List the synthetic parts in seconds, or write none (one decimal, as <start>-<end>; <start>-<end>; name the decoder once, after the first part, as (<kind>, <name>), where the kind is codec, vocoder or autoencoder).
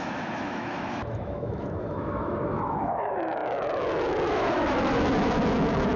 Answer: 0.0-6.0 (autoencoder, DAC-VAE)